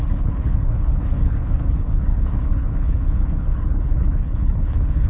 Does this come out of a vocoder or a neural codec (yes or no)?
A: yes